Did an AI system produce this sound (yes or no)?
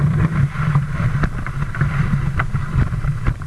no